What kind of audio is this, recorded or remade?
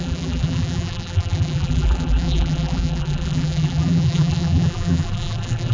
remade